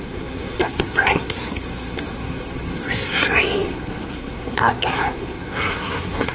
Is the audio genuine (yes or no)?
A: no